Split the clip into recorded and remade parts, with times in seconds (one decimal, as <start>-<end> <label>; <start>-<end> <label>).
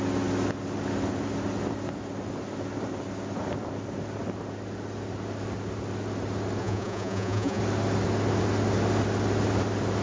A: 0.0-6.6 recorded; 6.6-7.6 remade; 7.6-10.0 recorded